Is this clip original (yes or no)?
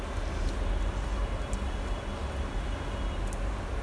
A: yes